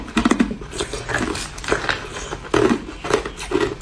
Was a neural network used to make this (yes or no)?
no